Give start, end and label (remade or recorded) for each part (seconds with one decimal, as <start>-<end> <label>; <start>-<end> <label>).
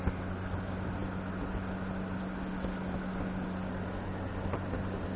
0.0-5.2 recorded